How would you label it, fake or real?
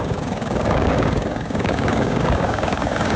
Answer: fake